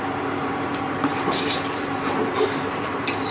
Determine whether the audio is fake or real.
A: fake